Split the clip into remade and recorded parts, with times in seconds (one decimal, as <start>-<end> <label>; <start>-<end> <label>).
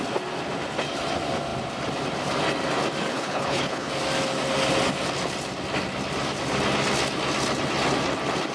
0.0-3.1 recorded; 3.1-3.9 remade; 3.9-8.5 recorded